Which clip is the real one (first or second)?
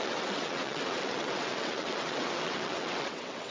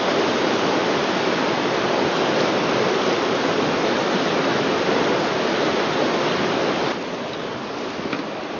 second